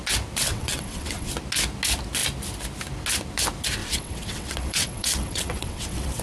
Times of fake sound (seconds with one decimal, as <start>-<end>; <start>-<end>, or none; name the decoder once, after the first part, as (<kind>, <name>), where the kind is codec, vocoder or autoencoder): 0.5-1.3 (vocoder, WaveNeXt); 3.8-6.2